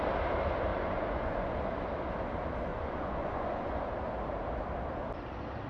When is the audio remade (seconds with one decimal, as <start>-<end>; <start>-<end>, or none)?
0.7-1.6; 2.7-3.8